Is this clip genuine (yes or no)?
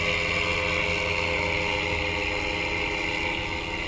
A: yes